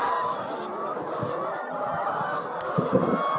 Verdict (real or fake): real